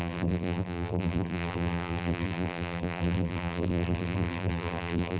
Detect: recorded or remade remade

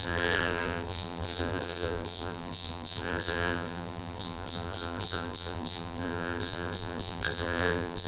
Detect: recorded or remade remade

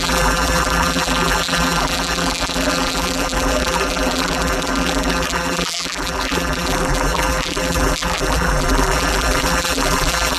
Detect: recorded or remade remade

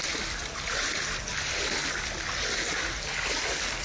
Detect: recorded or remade recorded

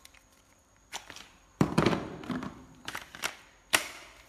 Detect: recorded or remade remade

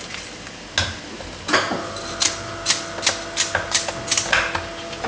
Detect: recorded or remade recorded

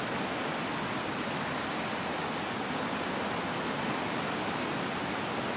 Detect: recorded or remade recorded